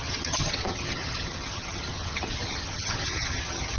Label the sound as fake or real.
fake